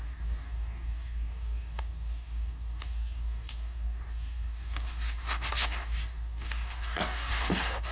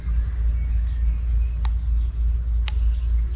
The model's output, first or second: first